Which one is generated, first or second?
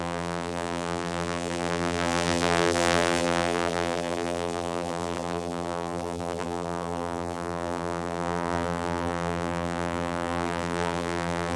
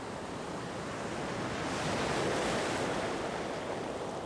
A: first